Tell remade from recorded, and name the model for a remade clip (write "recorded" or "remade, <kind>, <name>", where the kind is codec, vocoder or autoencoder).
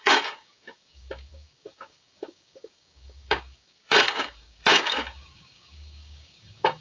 remade, codec, DAC